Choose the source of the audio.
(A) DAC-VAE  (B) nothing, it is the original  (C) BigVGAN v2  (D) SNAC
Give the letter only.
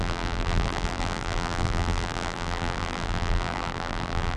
C